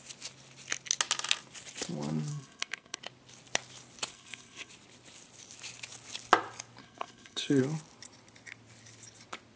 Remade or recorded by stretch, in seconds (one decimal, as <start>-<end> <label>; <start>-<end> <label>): 0.0-2.3 recorded; 2.3-3.0 remade; 3.0-4.1 recorded; 4.1-4.7 remade; 4.7-6.8 recorded; 6.8-7.6 remade; 7.6-9.6 recorded